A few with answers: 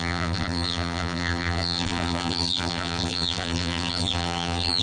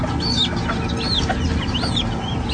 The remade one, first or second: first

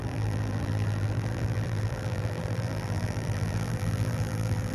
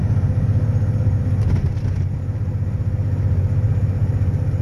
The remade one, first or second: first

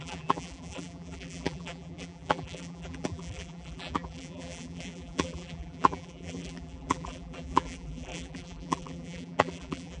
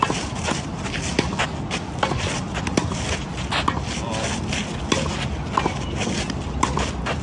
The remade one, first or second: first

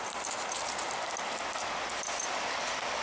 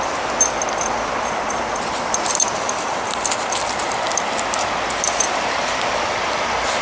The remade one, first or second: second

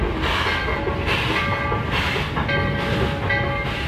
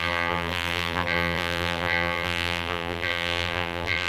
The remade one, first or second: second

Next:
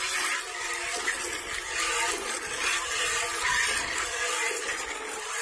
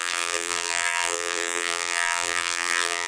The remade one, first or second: second